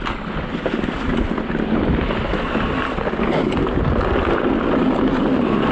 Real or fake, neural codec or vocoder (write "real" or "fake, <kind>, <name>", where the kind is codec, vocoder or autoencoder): real